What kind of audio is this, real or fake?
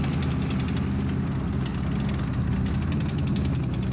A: real